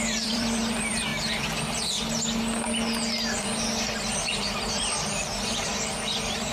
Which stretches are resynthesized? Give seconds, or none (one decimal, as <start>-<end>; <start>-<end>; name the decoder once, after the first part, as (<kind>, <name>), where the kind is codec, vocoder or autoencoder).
0.0-1.1 (vocoder, BigVGAN v2); 4.2-6.5